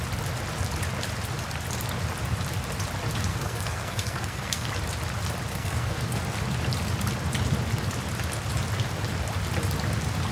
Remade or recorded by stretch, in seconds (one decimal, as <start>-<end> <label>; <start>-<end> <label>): 0.0-3.3 recorded; 3.3-4.7 remade; 4.7-5.5 recorded; 5.5-6.2 remade; 6.2-10.3 recorded